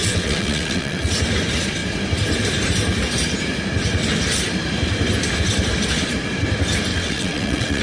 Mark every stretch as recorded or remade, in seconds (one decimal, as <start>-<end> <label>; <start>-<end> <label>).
0.0-1.1 remade; 1.1-6.9 recorded; 6.9-7.8 remade